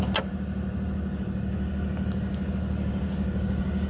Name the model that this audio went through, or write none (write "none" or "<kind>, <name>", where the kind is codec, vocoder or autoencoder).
none